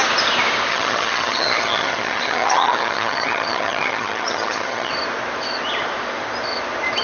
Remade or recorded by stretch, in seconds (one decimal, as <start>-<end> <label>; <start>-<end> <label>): 0.0-0.7 recorded; 0.7-4.9 remade; 4.9-7.0 recorded